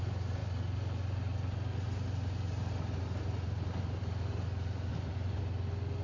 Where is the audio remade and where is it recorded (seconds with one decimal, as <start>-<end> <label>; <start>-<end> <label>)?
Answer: 0.0-4.9 recorded; 4.9-5.4 remade; 5.4-6.0 recorded